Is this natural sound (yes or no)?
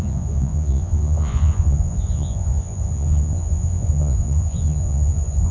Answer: no